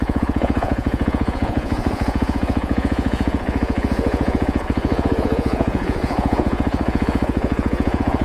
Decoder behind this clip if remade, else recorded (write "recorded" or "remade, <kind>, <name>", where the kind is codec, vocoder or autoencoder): remade, vocoder, Vocos